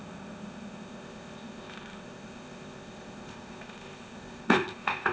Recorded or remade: remade